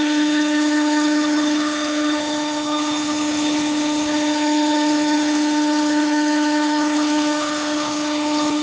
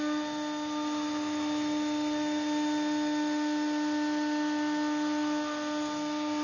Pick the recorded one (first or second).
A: second